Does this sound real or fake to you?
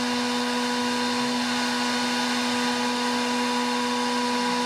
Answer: real